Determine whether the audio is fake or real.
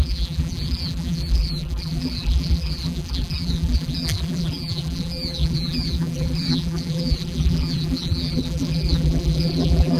fake